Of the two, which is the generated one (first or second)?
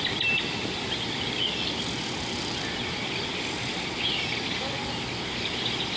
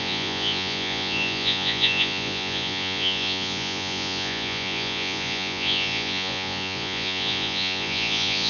second